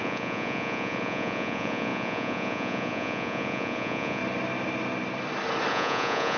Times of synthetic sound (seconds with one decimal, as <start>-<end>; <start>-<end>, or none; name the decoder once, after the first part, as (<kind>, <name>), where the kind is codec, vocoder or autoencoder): 0.0-4.2 (vocoder, Vocos); 5.7-6.4